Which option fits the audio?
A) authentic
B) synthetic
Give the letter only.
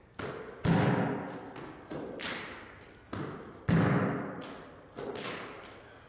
A